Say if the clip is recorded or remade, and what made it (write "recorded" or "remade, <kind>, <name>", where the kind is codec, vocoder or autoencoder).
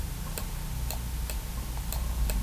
recorded